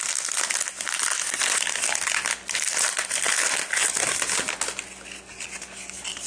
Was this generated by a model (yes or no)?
no